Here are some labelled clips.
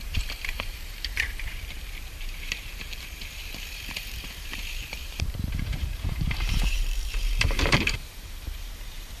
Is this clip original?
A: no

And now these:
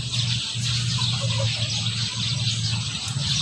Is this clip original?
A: yes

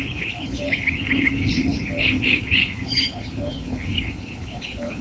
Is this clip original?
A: no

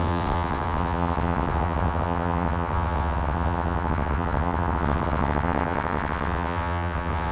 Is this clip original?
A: no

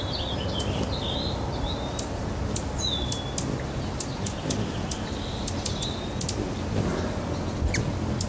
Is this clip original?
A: yes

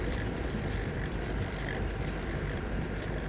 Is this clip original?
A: no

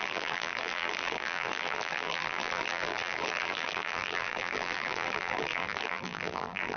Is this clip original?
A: no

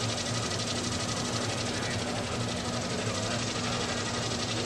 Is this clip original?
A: yes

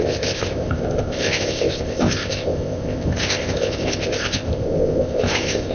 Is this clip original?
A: no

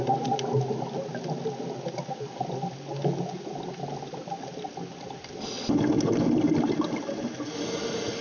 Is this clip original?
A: yes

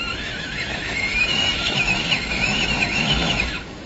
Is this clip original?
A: no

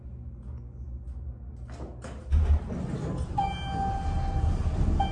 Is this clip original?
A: yes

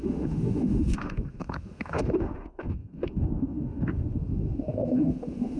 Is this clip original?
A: no